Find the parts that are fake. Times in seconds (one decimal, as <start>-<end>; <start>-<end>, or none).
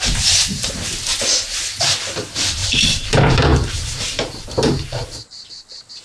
2.6-5.5